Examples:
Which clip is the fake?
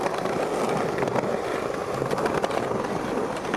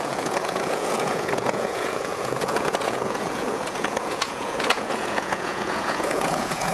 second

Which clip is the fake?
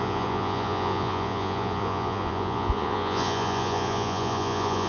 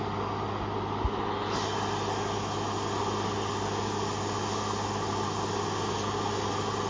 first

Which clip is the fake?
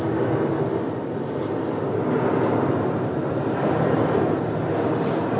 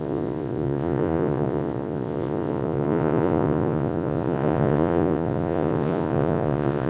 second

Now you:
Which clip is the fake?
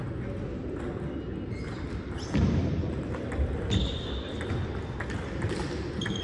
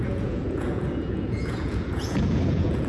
second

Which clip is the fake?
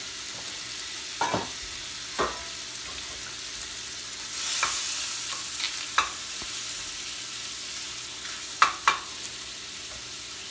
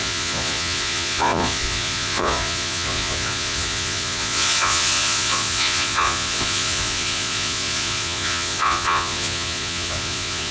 second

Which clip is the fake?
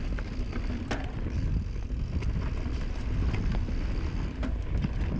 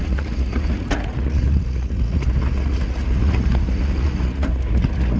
second